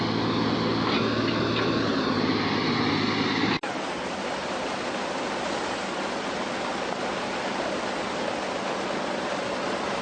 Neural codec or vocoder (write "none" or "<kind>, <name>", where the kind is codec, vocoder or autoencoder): none